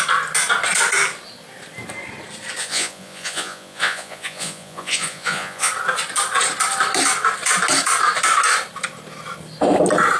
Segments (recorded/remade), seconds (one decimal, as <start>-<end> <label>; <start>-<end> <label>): 0.0-2.6 recorded; 2.6-5.7 remade; 5.7-10.2 recorded